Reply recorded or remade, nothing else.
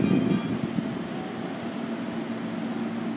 recorded